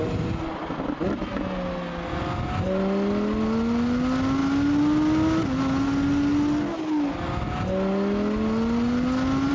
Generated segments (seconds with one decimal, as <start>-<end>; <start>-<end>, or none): none

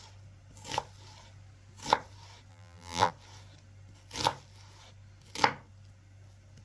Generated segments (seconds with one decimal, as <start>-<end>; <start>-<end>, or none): 2.5-3.1